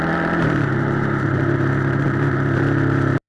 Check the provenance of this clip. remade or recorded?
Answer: remade